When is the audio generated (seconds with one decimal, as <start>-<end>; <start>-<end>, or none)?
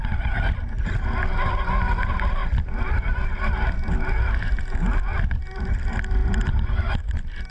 0.0-2.4; 5.4-7.5